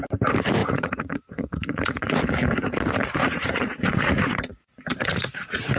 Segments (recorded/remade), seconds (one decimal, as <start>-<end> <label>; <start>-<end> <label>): 0.0-0.6 recorded; 0.6-2.2 remade; 2.2-3.2 recorded; 3.2-5.8 remade